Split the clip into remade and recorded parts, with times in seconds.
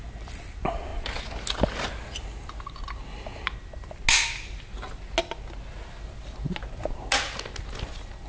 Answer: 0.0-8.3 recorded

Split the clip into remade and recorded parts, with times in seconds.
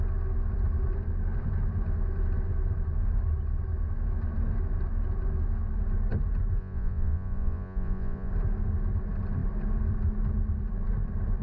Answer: 0.0-6.6 recorded; 6.6-8.3 remade; 8.3-11.4 recorded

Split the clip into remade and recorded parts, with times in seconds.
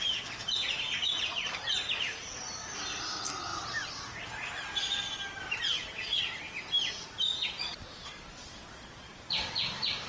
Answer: 0.0-7.3 recorded; 7.3-9.3 remade; 9.3-10.1 recorded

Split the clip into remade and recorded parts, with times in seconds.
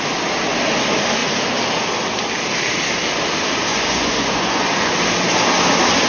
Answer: 0.0-3.7 recorded; 3.7-4.9 remade; 4.9-6.1 recorded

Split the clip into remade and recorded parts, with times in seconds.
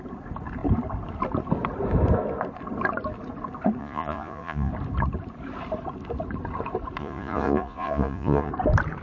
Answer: 0.0-3.8 recorded; 3.8-4.7 remade; 4.7-7.0 recorded; 7.0-8.5 remade; 8.5-9.0 recorded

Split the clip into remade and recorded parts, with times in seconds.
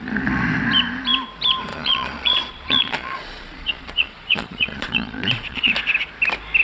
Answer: 0.0-1.7 recorded; 1.7-5.7 remade; 5.7-6.6 recorded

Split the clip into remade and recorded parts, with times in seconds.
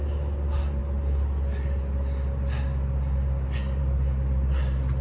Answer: 0.0-5.0 recorded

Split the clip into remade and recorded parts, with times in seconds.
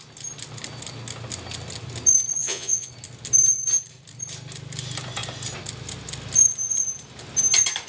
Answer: 0.0-2.4 recorded; 2.4-2.9 remade; 2.9-7.9 recorded